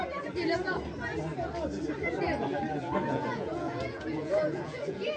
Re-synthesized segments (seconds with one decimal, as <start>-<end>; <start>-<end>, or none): 3.1-5.2